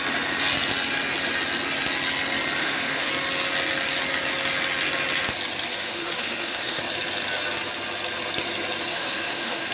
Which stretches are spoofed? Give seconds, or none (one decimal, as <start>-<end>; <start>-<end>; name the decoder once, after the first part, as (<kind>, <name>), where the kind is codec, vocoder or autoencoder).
2.6-3.1 (autoencoder, DAC-VAE); 5.7-6.8; 8.9-9.7

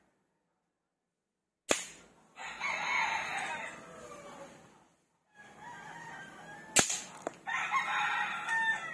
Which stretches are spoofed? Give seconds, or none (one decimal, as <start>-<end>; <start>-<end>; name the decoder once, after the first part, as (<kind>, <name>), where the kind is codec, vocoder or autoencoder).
none

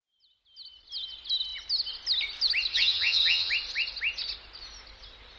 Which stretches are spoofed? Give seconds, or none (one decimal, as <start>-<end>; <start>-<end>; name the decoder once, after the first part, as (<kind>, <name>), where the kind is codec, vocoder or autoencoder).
2.7-3.5 (vocoder, HiFi-GAN)